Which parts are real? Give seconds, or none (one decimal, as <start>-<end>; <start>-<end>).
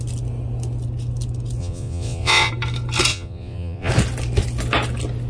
0.0-1.6; 2.5-3.1; 3.9-5.3